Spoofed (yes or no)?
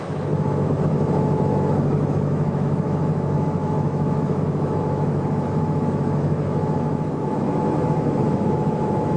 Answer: yes